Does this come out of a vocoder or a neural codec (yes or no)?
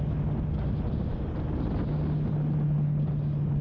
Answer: no